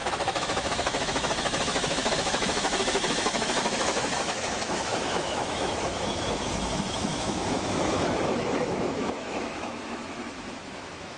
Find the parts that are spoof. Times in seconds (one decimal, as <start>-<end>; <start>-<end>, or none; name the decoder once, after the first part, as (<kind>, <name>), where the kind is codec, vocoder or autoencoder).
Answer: 0.0-11.2 (autoencoder, DAC-VAE)